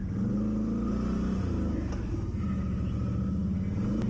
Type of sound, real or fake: real